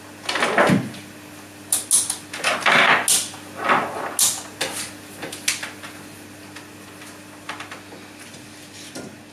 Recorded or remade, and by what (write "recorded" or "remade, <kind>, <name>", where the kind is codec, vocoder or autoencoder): recorded